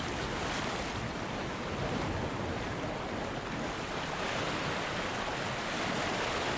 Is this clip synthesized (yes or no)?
no